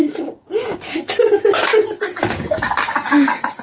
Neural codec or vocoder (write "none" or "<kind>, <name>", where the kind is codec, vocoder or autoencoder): codec, DAC